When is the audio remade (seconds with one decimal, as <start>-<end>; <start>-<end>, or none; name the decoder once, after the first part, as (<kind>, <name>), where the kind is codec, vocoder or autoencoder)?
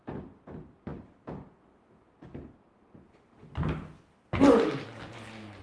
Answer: none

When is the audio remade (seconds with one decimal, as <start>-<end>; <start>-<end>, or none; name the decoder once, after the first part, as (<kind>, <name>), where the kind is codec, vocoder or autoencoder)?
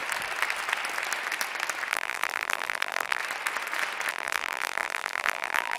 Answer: 1.9-3.2 (vocoder, BigVGAN v2); 4.1-5.8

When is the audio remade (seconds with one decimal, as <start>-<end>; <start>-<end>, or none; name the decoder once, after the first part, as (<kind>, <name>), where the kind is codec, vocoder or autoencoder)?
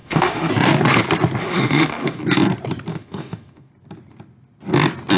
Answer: 0.0-0.5 (autoencoder, DAC-VAE); 1.4-2.2; 2.9-3.7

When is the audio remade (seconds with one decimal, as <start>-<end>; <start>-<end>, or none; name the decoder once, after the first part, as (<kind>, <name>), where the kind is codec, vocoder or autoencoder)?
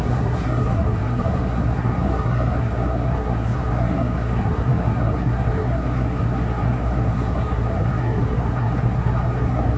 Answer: 0.0-9.8 (codec, SNAC)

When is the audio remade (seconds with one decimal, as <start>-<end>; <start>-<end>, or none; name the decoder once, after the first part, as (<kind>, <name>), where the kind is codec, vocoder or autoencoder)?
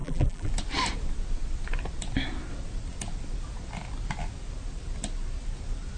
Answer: 0.0-0.5 (vocoder, BigVGAN v2)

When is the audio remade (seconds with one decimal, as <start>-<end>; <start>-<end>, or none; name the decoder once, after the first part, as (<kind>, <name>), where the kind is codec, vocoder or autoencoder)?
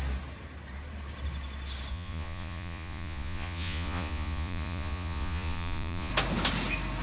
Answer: 1.9-6.1 (vocoder, Vocos)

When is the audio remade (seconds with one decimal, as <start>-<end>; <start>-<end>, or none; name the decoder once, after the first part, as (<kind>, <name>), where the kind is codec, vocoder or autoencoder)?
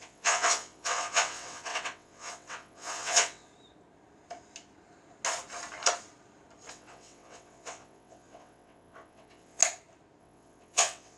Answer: 0.0-3.5 (vocoder, WaveNeXt); 6.7-9.6; 10.2-11.2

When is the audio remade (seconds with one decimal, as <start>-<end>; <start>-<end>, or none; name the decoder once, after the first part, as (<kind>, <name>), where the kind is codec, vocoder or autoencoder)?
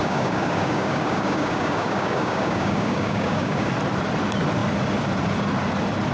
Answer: 0.0-3.7 (codec, DAC)